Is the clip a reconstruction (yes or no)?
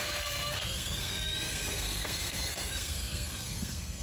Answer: yes